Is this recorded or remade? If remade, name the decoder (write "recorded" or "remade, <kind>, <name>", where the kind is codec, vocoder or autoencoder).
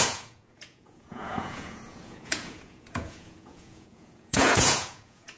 remade, vocoder, Vocos